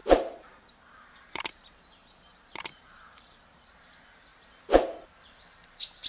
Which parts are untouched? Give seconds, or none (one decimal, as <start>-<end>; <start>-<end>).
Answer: 3.4-6.1